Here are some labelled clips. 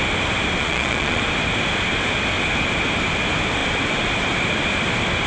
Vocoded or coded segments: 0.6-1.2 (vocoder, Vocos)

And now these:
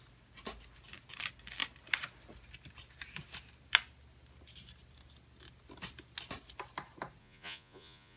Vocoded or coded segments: 7.2-8.2 (vocoder, Vocos)

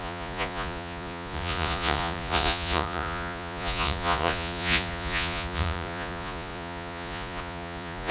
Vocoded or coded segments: 0.0-8.1 (vocoder, Vocos)

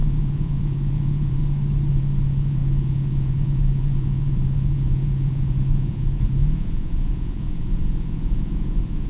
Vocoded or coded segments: 0.0-1.4 (vocoder, Vocos); 1.9-9.1

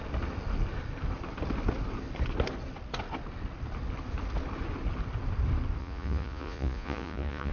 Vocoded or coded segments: 5.8-7.5 (vocoder, Vocos)

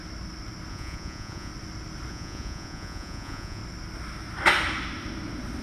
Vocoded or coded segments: 0.7-1.5 (vocoder, Vocos); 2.1-3.6